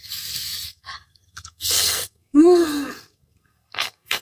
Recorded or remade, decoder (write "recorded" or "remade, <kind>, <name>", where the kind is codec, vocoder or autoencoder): remade, codec, SNAC